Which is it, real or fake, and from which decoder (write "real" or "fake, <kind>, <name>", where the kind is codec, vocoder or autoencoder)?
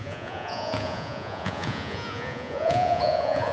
fake, vocoder, Vocos